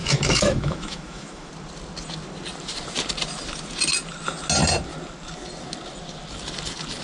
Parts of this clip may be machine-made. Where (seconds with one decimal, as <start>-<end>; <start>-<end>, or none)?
0.0-1.5